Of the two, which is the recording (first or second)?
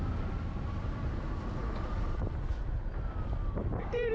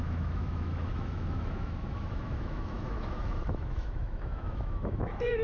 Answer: first